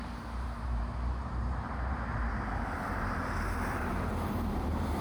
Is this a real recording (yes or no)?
no